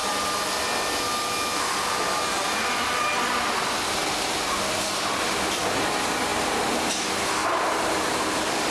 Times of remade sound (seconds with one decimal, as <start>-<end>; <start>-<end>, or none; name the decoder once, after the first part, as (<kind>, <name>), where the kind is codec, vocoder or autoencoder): 7.4-8.7 (vocoder, BigVGAN v2)